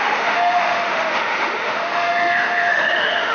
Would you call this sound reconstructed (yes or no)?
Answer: yes